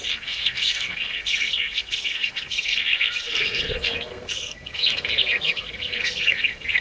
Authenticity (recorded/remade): remade